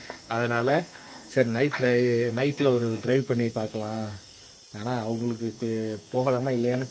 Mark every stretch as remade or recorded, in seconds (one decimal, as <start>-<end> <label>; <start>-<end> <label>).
0.0-4.4 remade; 4.4-5.4 recorded; 5.4-6.9 remade